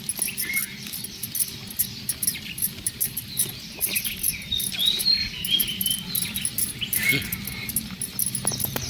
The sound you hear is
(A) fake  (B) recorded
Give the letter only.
B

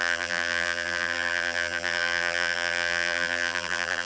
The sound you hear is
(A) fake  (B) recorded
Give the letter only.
A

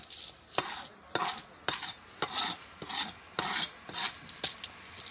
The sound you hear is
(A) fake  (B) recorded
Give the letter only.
B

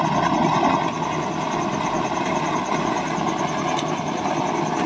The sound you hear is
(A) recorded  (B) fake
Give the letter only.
A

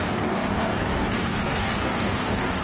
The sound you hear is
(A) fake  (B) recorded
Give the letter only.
A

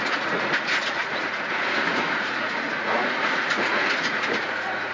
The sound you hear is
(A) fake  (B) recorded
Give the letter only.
A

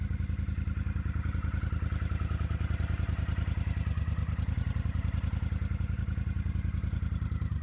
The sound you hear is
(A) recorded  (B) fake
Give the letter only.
A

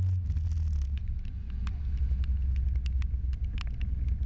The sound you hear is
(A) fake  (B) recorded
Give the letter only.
B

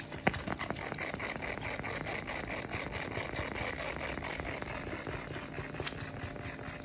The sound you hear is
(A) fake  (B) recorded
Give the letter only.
B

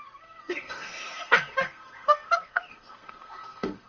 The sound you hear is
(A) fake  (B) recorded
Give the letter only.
A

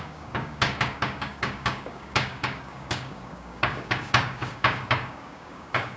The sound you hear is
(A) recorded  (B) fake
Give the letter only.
B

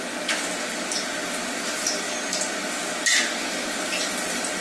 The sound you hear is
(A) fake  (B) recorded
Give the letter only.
B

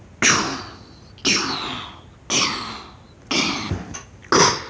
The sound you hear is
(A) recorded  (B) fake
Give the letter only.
A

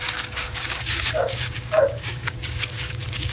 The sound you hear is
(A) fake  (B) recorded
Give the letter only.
A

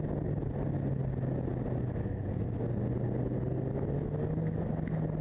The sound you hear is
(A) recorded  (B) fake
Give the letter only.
A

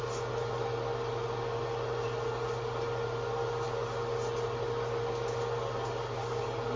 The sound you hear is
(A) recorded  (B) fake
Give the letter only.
A